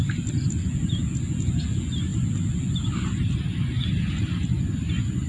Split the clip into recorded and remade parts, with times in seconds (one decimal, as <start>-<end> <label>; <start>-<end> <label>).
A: 0.0-5.3 recorded